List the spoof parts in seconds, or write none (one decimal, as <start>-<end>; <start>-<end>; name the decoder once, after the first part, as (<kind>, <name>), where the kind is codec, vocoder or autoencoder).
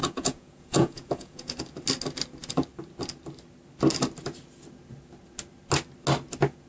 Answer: 0.0-1.5 (vocoder, Vocos)